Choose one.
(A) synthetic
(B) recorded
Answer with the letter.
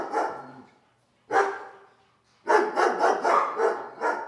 B